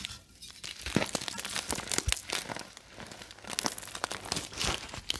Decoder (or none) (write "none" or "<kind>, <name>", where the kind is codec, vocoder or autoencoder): none